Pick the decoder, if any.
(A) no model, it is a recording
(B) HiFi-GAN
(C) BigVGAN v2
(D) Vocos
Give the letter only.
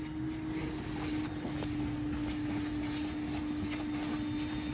A